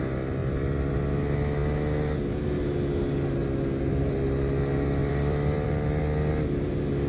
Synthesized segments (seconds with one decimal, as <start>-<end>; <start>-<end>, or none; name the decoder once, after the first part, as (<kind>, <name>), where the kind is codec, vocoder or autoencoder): 0.4-0.9 (vocoder, BigVGAN v2); 5.0-6.0